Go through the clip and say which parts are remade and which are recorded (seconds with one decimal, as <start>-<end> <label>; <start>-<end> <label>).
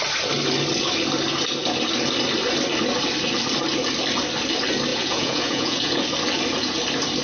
0.0-4.9 recorded; 4.9-6.0 remade; 6.0-7.2 recorded